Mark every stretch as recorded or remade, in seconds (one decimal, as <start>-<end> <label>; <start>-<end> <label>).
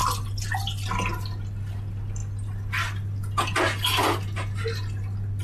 0.0-5.4 recorded